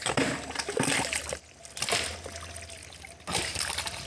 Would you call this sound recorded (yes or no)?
yes